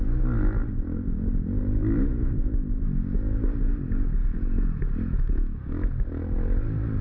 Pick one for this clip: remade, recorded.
recorded